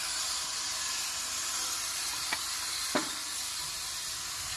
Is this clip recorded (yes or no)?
yes